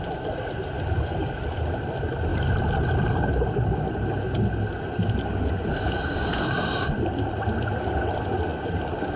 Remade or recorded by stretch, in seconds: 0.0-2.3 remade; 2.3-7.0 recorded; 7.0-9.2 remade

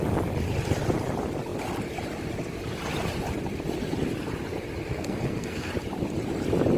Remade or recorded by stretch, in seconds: 0.0-4.9 recorded; 4.9-5.7 remade; 5.7-6.8 recorded

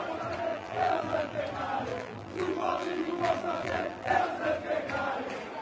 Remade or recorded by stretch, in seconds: 0.0-0.5 recorded; 0.5-1.4 remade; 1.4-1.9 recorded; 1.9-4.1 remade; 4.1-5.6 recorded

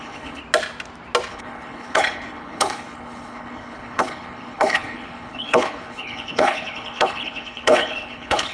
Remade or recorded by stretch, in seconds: 0.0-0.4 remade; 0.4-1.3 recorded; 1.3-8.5 remade

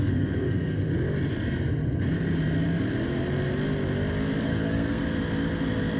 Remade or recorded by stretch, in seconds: 0.0-0.8 remade; 0.8-4.4 recorded; 4.4-5.0 remade; 5.0-6.0 recorded

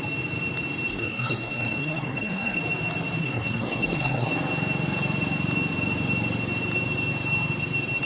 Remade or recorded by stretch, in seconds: 0.0-0.9 recorded; 0.9-2.6 remade; 2.6-3.2 recorded; 3.2-4.3 remade; 4.3-8.0 recorded